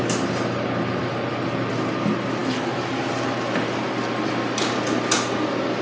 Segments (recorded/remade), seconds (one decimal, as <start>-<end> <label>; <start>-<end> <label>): 0.0-5.8 recorded